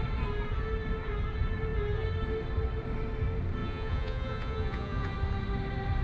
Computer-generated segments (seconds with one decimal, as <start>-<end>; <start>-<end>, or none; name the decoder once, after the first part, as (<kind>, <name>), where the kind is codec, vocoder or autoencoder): 3.6-5.1 (vocoder, Vocos)